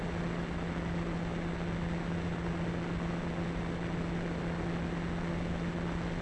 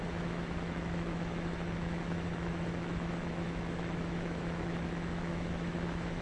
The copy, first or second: second